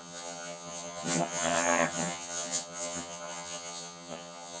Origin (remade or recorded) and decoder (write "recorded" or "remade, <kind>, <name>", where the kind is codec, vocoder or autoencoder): remade, vocoder, HiFi-GAN